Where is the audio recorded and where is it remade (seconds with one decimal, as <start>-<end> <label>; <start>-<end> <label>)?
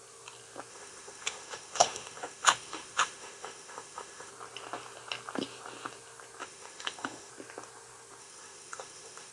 0.0-0.7 recorded; 0.7-4.3 remade; 4.3-6.4 recorded; 6.4-7.3 remade; 7.3-8.2 recorded; 8.2-9.3 remade